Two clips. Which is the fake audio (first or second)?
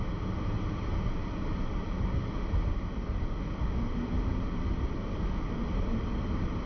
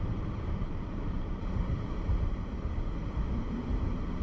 second